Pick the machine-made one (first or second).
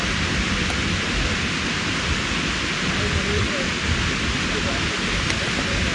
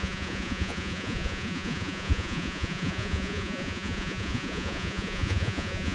second